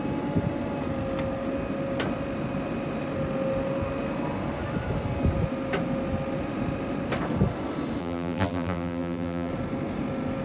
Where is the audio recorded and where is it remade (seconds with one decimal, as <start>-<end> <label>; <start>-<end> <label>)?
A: 0.0-8.0 recorded; 8.0-9.5 remade; 9.5-10.4 recorded